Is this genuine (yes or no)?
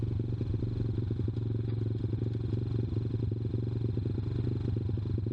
yes